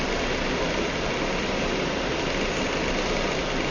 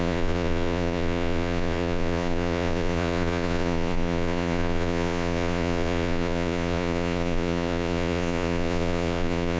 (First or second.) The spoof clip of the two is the second